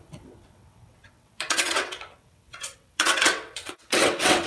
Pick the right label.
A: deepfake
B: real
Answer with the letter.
A